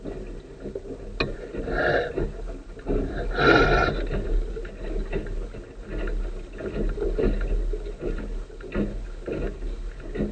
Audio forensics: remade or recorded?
recorded